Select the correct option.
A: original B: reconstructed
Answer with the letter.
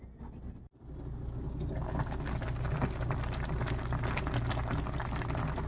A